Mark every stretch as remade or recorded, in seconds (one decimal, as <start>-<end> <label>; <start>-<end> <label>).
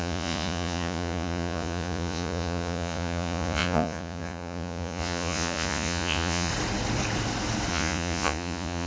0.0-6.5 remade; 6.5-7.7 recorded; 7.7-8.9 remade